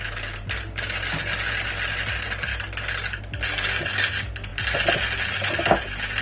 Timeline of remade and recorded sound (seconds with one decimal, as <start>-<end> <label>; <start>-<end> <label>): 0.0-6.2 recorded